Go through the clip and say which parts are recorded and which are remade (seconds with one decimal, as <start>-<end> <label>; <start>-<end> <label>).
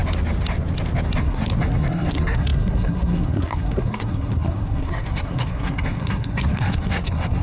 0.0-1.2 recorded; 1.2-7.4 remade